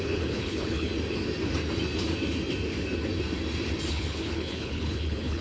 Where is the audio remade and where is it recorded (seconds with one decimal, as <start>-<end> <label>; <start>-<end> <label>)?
0.0-0.9 remade; 0.9-3.9 recorded; 3.9-5.4 remade